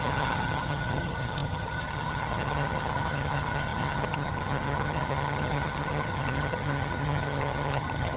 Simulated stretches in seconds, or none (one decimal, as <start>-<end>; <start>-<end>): 0.0-8.2